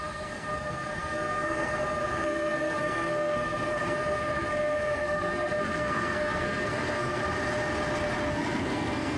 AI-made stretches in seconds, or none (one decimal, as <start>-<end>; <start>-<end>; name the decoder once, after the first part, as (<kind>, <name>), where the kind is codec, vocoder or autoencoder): 0.0-7.2 (codec, SNAC); 8.3-9.2